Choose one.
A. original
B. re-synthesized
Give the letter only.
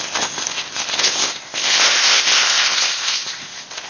B